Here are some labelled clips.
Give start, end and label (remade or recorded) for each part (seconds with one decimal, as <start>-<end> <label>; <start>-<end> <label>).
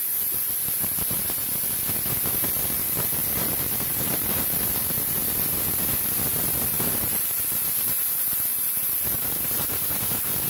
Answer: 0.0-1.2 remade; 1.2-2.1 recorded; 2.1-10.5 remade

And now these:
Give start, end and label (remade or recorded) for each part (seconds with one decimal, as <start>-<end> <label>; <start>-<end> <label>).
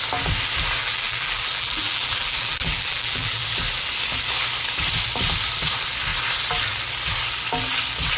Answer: 0.0-0.8 recorded; 0.8-3.4 remade; 3.4-8.2 recorded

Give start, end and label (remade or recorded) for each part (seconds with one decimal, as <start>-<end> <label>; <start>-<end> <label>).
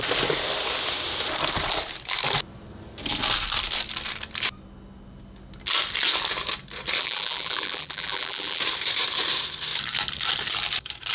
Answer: 0.0-7.0 recorded; 7.0-8.6 remade; 8.6-11.1 recorded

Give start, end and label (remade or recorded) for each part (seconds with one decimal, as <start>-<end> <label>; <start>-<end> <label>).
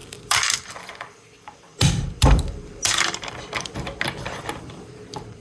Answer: 0.0-0.9 remade; 0.9-1.7 recorded; 1.7-4.8 remade; 4.8-5.4 recorded